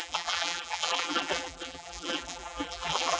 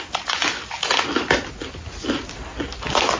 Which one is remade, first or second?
first